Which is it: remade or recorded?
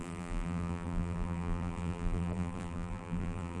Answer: remade